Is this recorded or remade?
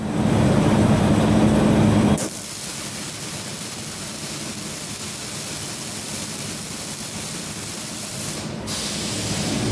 recorded